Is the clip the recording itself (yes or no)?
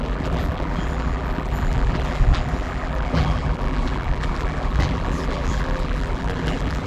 no